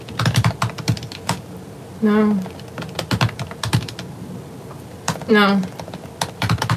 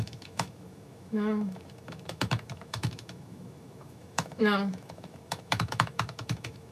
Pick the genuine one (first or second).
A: first